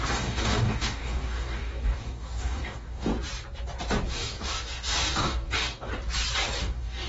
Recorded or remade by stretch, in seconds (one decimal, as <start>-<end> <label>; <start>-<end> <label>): 0.0-3.1 remade; 3.1-4.1 recorded; 4.1-5.9 remade; 5.9-6.6 recorded; 6.6-7.1 remade